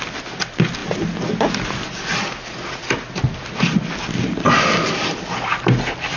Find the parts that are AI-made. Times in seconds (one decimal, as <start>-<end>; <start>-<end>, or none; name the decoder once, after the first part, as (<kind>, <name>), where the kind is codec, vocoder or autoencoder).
none